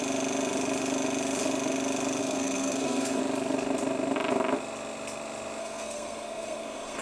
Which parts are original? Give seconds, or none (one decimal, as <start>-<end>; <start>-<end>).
0.0-2.2; 3.2-5.6